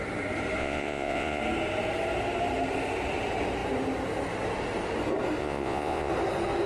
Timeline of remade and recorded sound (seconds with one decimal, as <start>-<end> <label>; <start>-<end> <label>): 0.0-0.6 recorded; 0.6-1.4 remade; 1.4-5.4 recorded; 5.4-6.1 remade; 6.1-6.7 recorded